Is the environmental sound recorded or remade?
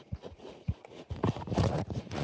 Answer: remade